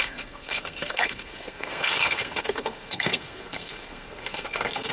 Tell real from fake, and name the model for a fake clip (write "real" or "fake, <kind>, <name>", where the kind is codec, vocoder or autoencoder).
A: fake, codec, SNAC